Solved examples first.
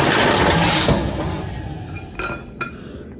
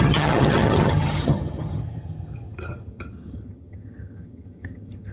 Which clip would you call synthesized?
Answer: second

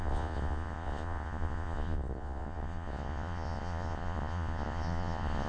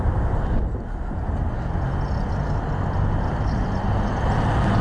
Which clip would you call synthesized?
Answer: first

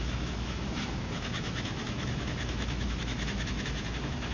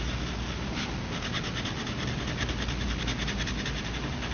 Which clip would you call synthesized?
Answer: first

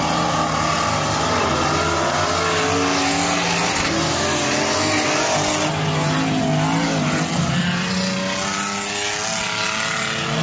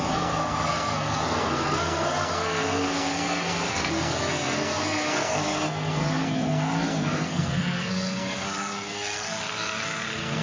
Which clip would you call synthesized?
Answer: second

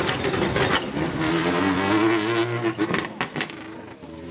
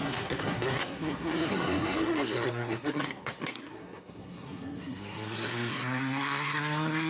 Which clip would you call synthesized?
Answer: second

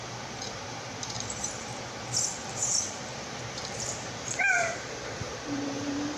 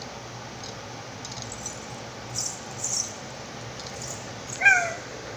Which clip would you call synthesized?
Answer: first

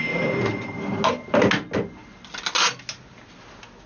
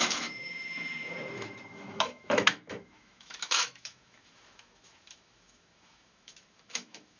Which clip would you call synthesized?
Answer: second